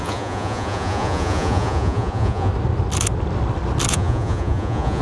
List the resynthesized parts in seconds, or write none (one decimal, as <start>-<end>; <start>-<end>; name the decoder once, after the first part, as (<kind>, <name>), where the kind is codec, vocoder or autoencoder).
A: 0.0-2.5 (vocoder, Vocos); 3.9-5.0